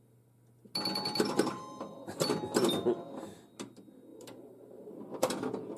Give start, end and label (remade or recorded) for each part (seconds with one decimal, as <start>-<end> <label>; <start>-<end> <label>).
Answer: 0.0-4.1 recorded; 4.1-5.0 remade; 5.0-5.8 recorded